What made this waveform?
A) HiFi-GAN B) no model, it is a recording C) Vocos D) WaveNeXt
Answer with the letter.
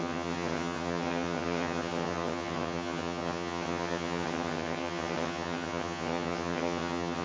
A